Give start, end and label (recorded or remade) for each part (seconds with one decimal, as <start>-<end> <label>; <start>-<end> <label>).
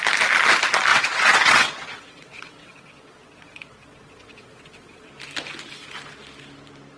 0.0-0.9 recorded; 0.9-5.1 remade; 5.1-7.0 recorded